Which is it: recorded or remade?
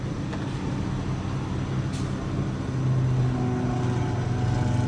recorded